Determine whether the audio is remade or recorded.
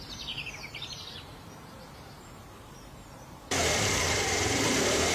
remade